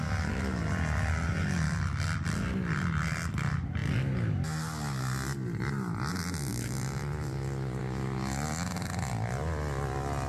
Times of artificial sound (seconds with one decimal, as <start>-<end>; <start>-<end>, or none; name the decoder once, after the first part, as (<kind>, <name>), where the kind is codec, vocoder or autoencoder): none